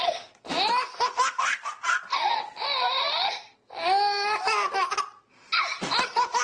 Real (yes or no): yes